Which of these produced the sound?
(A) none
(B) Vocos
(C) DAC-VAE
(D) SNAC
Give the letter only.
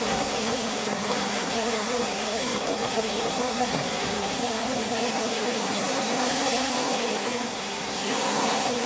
D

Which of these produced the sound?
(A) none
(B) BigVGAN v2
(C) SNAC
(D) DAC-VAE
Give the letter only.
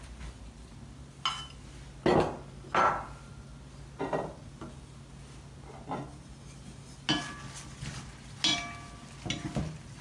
A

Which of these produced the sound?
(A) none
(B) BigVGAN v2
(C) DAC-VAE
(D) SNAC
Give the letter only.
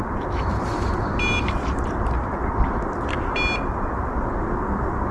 A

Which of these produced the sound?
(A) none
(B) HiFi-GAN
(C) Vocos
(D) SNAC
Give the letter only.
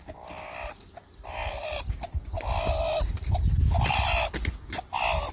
A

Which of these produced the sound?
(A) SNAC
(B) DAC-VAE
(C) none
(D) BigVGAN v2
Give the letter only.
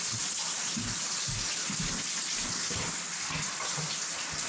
C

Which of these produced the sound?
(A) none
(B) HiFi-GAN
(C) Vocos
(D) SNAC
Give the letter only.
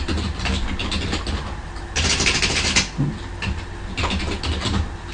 A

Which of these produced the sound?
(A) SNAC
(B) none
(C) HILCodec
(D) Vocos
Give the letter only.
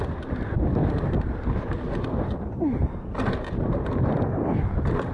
B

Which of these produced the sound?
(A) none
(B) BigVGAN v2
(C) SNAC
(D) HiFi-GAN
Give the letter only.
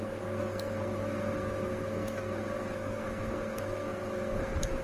C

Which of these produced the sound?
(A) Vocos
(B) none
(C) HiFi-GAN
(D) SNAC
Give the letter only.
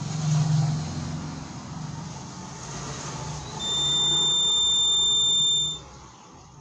B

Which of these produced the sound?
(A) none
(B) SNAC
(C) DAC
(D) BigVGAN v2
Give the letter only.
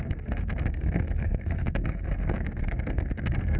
B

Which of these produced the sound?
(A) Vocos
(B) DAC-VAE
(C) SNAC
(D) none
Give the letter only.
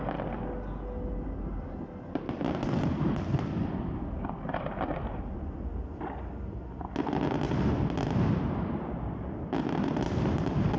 D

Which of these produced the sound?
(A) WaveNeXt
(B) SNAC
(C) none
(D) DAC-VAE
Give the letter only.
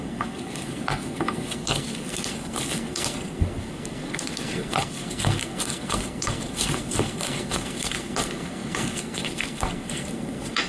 B